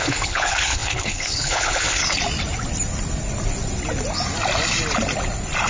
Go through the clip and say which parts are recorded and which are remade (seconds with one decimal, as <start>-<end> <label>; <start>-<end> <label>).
0.0-2.0 remade; 2.0-5.7 recorded